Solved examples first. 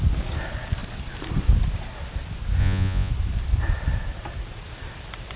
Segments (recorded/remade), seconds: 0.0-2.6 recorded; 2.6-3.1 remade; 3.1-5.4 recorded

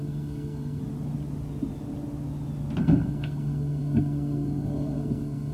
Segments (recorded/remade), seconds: 0.0-0.8 remade; 0.8-2.8 recorded; 2.8-5.5 remade

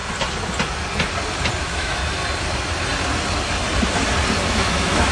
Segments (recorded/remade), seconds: 0.0-1.6 recorded; 1.6-2.0 remade; 2.0-4.4 recorded; 4.4-5.1 remade

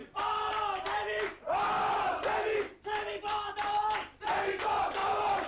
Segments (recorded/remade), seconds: 0.0-5.5 recorded